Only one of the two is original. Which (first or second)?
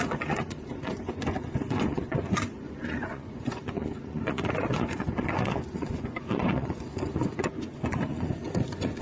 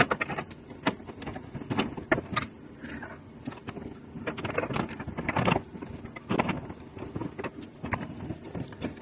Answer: second